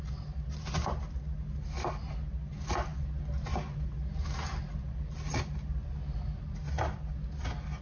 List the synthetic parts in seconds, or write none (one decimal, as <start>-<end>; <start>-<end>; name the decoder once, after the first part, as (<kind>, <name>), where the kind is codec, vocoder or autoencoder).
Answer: none